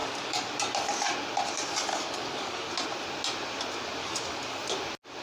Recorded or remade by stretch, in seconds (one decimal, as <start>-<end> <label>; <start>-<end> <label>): 0.0-0.5 remade; 0.5-1.9 recorded; 1.9-2.7 remade; 2.7-4.0 recorded; 4.0-4.6 remade; 4.6-5.2 recorded